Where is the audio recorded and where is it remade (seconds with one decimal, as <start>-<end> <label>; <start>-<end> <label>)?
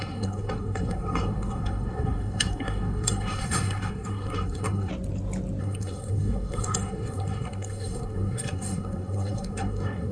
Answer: 0.0-4.9 remade; 4.9-5.6 recorded; 5.6-10.1 remade